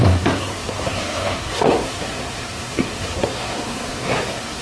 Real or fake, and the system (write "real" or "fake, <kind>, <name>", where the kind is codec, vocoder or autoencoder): fake, codec, SNAC